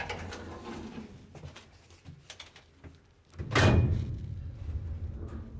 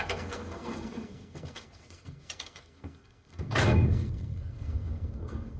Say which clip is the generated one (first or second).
second